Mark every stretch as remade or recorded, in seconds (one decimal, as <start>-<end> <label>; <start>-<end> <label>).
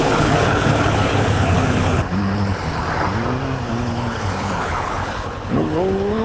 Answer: 0.0-2.8 remade; 2.8-3.7 recorded; 3.7-6.2 remade